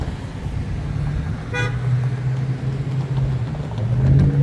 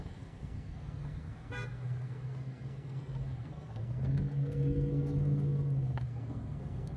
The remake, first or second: second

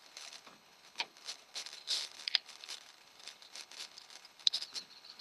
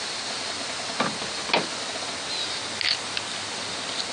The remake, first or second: first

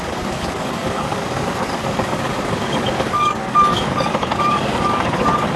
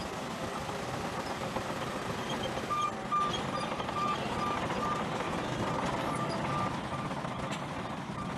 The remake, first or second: first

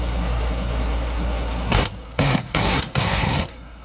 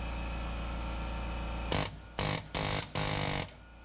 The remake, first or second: first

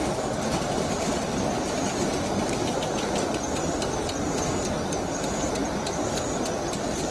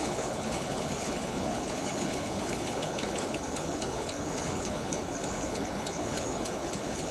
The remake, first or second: second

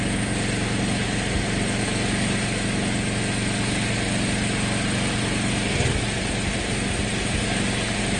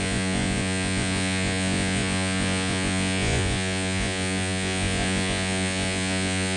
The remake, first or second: second